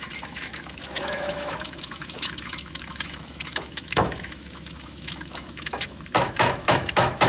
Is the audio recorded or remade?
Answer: remade